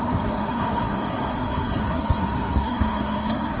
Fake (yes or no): yes